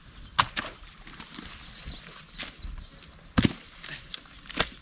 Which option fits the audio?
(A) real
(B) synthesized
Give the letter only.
A